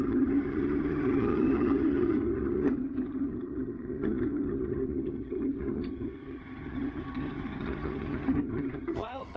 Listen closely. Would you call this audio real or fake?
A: fake